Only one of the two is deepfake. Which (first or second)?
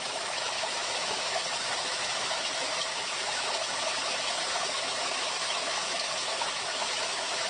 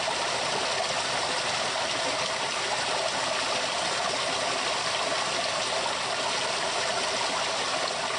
first